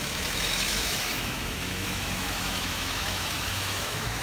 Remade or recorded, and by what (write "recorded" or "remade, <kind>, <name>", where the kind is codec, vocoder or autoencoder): remade, autoencoder, DAC-VAE